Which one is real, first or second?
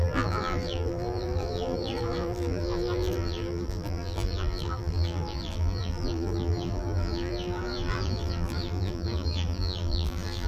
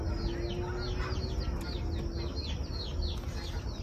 second